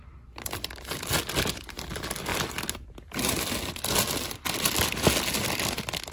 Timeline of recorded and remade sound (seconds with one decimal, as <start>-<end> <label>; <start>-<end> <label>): 0.0-6.1 recorded